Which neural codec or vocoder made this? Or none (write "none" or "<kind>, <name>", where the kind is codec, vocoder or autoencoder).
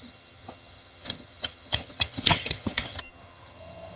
vocoder, HiFi-GAN